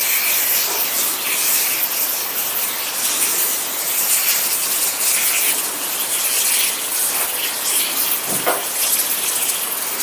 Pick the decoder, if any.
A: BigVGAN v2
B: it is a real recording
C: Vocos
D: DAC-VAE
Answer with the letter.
B